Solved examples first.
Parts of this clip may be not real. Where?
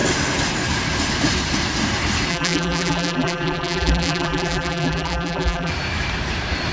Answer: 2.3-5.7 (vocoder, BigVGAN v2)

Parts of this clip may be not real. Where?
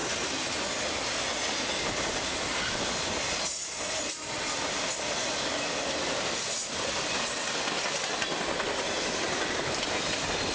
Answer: none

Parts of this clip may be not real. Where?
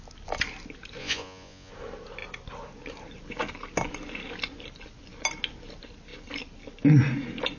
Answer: 1.0-1.7 (vocoder, Vocos)